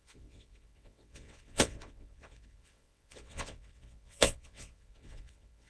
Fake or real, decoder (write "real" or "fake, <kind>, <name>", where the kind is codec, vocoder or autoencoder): fake, vocoder, WaveNeXt